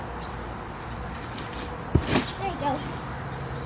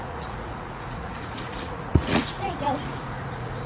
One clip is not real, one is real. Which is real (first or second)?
first